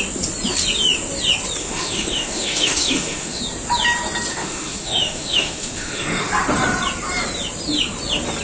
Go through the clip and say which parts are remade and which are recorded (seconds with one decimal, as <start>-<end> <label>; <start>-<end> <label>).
0.0-1.6 recorded; 1.6-3.4 remade; 3.4-4.3 recorded; 4.3-6.3 remade; 6.3-8.4 recorded